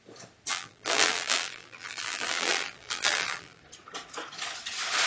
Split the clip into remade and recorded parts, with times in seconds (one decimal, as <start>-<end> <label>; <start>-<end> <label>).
0.0-0.5 recorded; 0.5-3.6 remade; 3.6-5.1 recorded